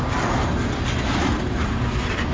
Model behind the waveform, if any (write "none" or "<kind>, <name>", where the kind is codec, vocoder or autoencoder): none